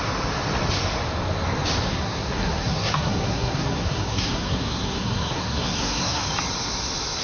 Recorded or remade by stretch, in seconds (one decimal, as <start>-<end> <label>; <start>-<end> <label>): 0.0-1.9 recorded; 1.9-6.2 remade; 6.2-7.2 recorded